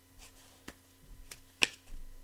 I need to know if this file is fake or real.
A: real